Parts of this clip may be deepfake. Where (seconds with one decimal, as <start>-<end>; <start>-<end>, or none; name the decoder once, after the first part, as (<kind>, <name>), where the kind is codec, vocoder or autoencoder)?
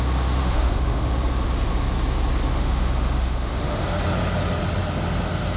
0.4-1.0 (autoencoder, DAC-VAE); 2.5-3.8